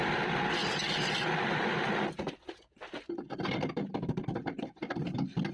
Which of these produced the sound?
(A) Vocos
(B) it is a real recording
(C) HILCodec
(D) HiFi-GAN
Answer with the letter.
B